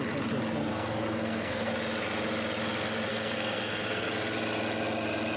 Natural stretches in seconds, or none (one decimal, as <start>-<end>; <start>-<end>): 0.0-0.7; 1.7-3.1; 4.1-5.4